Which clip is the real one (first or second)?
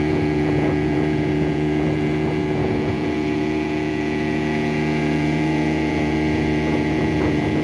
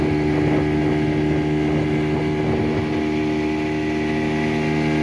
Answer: second